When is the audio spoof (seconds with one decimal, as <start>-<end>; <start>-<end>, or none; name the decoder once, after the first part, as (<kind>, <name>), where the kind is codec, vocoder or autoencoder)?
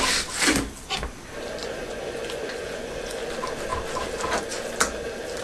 1.6-3.3 (vocoder, Vocos)